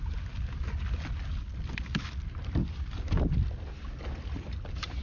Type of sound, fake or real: real